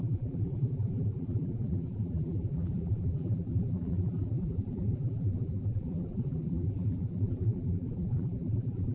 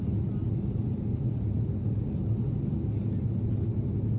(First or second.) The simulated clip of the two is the first